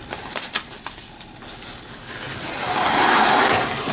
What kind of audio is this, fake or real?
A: fake